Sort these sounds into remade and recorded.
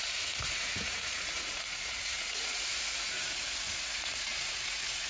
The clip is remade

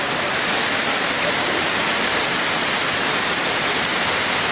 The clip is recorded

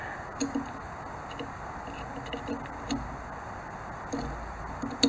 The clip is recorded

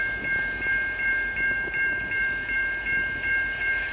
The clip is remade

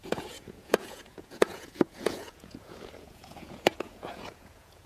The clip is remade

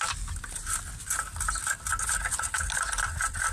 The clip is recorded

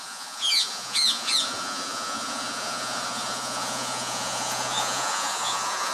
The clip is remade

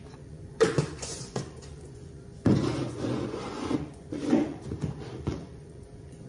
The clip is remade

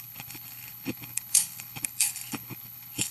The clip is remade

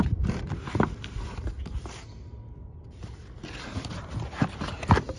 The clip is recorded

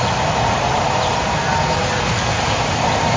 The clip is recorded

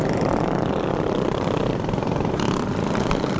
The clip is remade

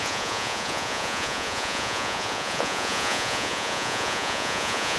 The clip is remade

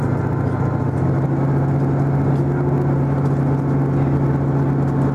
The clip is recorded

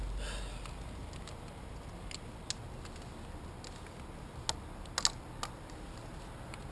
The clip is recorded